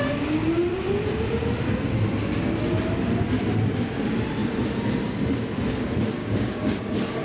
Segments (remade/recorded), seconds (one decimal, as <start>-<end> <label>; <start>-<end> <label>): 0.0-6.2 recorded; 6.2-6.8 remade; 6.8-7.2 recorded